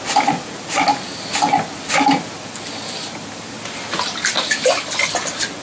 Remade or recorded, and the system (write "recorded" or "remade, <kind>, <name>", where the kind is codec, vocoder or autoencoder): recorded